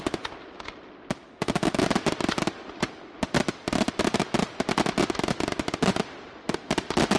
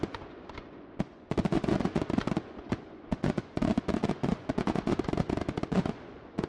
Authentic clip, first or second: first